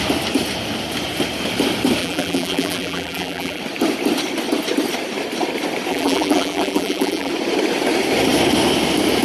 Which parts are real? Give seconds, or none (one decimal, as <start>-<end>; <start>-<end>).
0.0-2.0; 3.6-5.9; 7.3-9.2